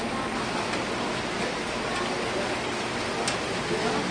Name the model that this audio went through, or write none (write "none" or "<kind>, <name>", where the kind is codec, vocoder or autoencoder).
none